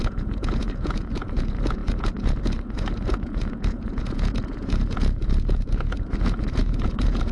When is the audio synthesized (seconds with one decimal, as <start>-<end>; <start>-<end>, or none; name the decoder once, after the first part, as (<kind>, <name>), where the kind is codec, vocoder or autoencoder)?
0.0-7.3 (vocoder, Vocos)

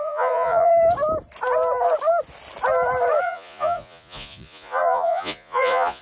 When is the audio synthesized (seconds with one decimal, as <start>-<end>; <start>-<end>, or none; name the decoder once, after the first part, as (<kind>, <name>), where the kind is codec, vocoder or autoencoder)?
0.0-0.7 (vocoder, Vocos); 3.2-6.0

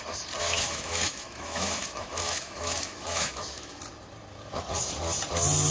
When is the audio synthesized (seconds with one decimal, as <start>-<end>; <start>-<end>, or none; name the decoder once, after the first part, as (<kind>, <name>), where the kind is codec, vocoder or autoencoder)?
0.4-3.8 (autoencoder, DAC-VAE)

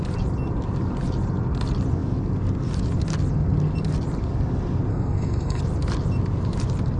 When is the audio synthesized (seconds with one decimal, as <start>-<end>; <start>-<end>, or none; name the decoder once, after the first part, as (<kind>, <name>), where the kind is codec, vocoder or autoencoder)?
4.9-5.6 (codec, SNAC)